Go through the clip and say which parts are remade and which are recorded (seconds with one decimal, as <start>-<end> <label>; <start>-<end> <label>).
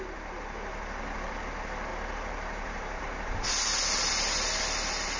0.0-1.9 recorded; 1.9-3.0 remade; 3.0-5.2 recorded